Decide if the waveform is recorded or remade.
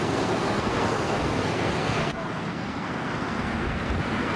remade